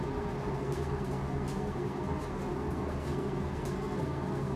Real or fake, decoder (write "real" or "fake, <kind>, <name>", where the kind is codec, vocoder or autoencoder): fake, codec, SNAC